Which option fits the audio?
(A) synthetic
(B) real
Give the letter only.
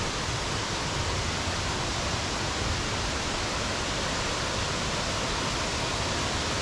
B